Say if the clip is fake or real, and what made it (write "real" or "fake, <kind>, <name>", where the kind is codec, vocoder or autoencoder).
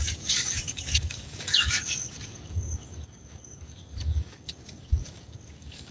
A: fake, codec, DAC